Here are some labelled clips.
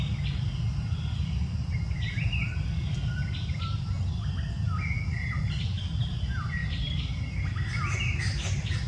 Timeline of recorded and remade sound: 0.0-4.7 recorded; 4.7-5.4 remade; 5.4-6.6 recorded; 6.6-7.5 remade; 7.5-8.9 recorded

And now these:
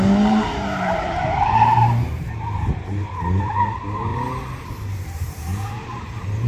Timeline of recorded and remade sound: 0.0-4.1 remade; 4.1-5.0 recorded; 5.0-6.5 remade

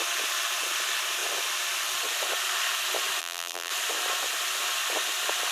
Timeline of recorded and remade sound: 0.0-3.2 recorded; 3.2-3.7 remade; 3.7-5.5 recorded

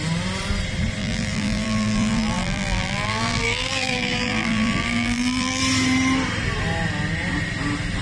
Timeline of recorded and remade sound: 0.0-1.0 recorded; 1.0-5.6 remade; 5.6-8.0 recorded